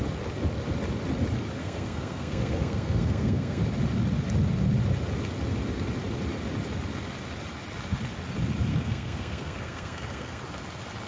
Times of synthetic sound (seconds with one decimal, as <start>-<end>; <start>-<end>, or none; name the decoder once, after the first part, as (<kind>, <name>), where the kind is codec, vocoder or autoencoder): 1.6-3.6 (codec, SNAC); 8.7-10.4